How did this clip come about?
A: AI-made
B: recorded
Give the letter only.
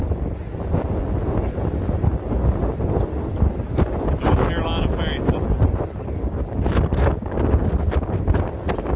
B